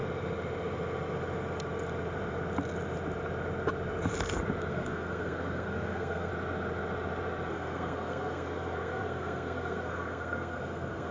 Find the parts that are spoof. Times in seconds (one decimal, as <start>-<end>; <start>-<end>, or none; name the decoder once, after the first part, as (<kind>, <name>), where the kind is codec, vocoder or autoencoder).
4.7-6.3 (codec, SNAC); 7.5-11.1